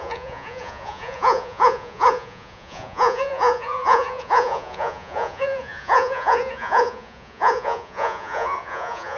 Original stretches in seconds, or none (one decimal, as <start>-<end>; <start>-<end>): none